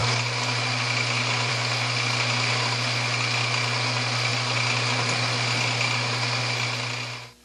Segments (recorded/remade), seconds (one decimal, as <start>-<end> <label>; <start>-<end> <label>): 0.0-7.4 recorded